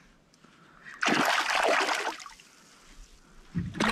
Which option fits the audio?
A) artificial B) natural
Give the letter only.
B